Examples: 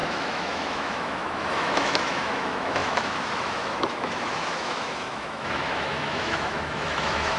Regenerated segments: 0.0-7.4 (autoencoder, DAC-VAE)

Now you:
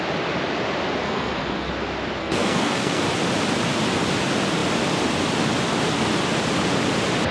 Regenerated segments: 1.0-1.7 (codec, SNAC); 2.2-3.0

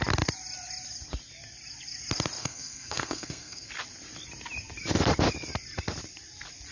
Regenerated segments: 2.4-3.7 (codec, SNAC)

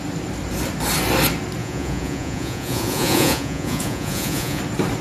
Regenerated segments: 1.6-4.6 (vocoder, Vocos)

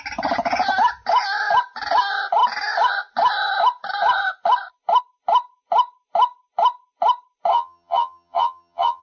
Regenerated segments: 7.5-9.0 (vocoder, HiFi-GAN)

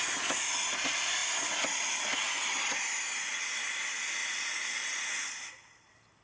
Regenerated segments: 4.2-4.8 (vocoder, Vocos)

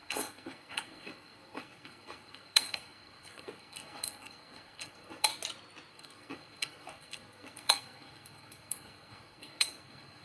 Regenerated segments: 0.0-5.3 (codec, SNAC); 5.9-10.2